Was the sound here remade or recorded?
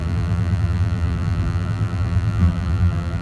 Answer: remade